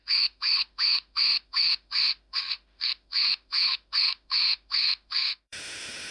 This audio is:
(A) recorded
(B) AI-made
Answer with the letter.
B